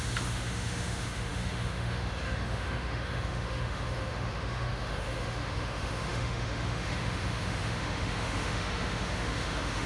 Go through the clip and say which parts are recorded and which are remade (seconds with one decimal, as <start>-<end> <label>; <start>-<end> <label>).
0.0-9.9 remade